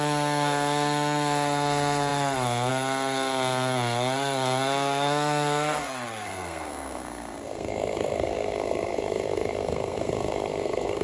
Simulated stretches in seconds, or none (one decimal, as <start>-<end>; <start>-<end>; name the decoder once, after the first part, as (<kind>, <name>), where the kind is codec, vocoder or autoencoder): 0.0-11.0 (codec, SNAC)

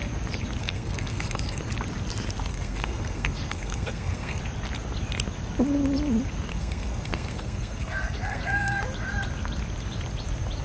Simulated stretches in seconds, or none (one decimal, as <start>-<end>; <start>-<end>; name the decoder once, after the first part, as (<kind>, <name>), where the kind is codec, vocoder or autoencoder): 0.6-1.6 (codec, SNAC); 2.5-4.4; 6.5-8.8

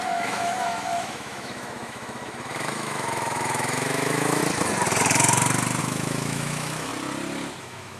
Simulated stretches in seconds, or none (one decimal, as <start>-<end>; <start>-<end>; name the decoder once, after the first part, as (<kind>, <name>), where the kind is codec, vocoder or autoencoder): 0.0-4.4 (autoencoder, DAC-VAE); 5.8-6.9; 7.6-8.0

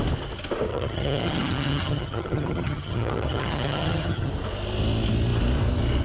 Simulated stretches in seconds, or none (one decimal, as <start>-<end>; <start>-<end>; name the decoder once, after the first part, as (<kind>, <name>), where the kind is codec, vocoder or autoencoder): 0.7-4.3 (vocoder, HiFi-GAN)

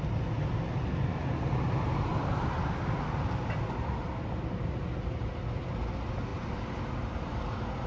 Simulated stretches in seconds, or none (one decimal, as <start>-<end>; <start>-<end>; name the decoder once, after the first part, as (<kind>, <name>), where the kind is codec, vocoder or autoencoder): 6.3-7.3 (vocoder, BigVGAN v2)

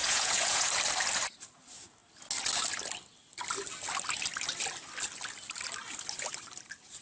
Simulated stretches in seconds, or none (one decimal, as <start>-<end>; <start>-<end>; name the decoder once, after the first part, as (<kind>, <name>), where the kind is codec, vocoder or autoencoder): 0.0-0.7 (vocoder, Vocos)

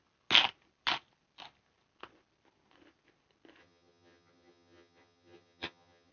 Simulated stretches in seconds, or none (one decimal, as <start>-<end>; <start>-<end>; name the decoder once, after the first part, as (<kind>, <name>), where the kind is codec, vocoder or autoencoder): 3.6-6.1 (vocoder, HiFi-GAN)

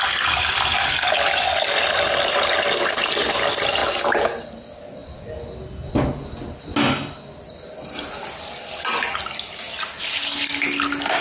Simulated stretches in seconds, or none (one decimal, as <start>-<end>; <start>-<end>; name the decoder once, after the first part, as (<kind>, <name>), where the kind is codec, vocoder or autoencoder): none